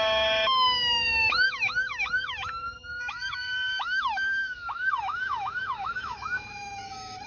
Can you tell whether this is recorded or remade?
remade